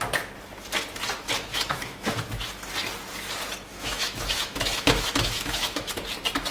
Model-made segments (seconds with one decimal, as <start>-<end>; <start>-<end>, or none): 1.5-2.5; 3.7-5.9